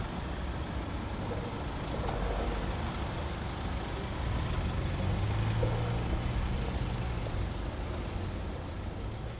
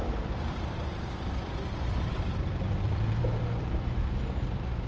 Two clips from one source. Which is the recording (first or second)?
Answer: first